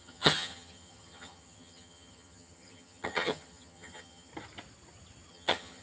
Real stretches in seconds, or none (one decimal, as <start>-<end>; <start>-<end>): 4.3-5.3